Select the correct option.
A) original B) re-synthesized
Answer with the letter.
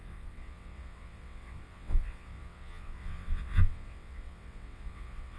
B